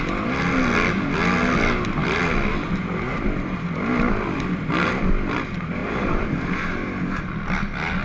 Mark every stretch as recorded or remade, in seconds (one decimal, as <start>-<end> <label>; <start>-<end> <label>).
0.0-5.8 recorded; 5.8-7.3 remade; 7.3-8.0 recorded